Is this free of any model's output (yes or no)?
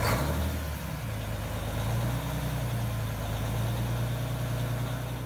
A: yes